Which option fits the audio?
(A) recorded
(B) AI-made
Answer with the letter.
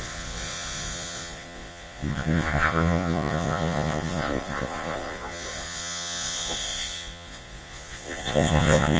B